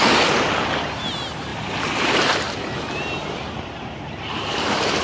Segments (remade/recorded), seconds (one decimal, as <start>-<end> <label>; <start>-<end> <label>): 0.0-1.5 recorded; 1.5-4.0 remade; 4.0-5.0 recorded